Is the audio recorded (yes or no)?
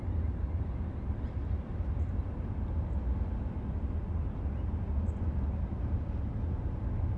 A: yes